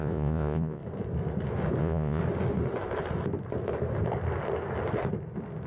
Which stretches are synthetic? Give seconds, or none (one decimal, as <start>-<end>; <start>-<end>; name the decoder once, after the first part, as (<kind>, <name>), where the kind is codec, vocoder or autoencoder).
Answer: 0.0-0.8 (vocoder, Vocos); 1.8-2.2